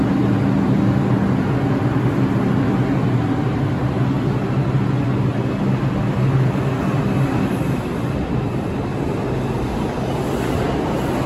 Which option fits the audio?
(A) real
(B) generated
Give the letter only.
A